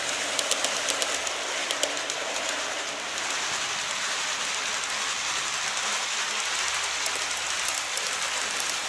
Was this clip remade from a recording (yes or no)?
no